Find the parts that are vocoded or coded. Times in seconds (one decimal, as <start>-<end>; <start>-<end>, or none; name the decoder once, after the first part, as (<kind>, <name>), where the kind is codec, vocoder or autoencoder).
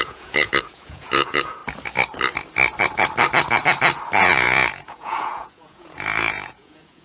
0.0-1.6 (vocoder, Vocos); 4.2-7.0